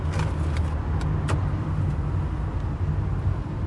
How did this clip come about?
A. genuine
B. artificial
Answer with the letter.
A